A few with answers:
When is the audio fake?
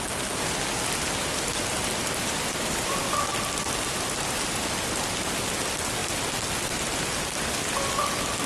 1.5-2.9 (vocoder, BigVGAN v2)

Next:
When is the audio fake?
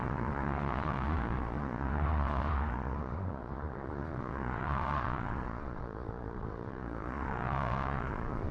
0.0-8.5 (vocoder, Vocos)